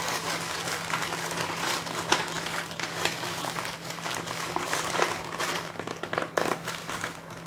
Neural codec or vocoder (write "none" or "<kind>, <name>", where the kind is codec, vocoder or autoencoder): codec, DAC